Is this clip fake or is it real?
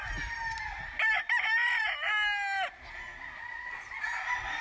real